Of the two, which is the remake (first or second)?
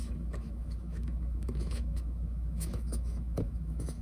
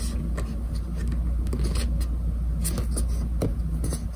first